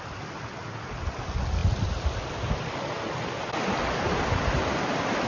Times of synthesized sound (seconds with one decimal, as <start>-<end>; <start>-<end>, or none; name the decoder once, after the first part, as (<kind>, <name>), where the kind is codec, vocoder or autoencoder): none